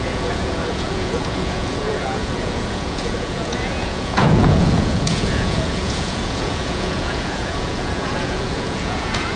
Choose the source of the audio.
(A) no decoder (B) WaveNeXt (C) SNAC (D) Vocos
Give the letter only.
D